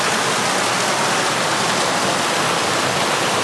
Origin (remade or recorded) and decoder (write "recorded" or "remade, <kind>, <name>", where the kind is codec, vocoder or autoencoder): recorded